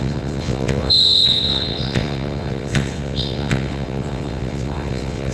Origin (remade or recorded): remade